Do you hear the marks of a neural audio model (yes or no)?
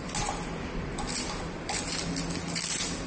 no